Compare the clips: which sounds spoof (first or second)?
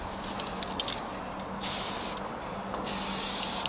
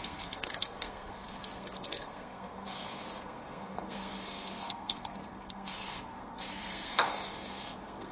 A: second